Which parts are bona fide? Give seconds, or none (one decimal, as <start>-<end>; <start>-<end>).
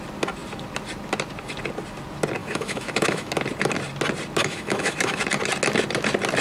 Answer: 0.0-2.4; 3.3-4.4; 5.2-6.4